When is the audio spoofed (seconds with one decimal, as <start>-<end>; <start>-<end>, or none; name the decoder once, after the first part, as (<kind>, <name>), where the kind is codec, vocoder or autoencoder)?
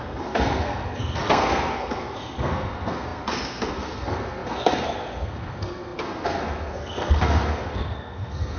0.0-8.6 (codec, SNAC)